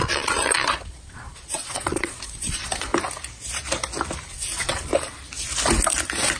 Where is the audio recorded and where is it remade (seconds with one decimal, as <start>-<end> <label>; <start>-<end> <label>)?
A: 0.0-2.9 remade; 2.9-4.3 recorded; 4.3-4.9 remade; 4.9-6.4 recorded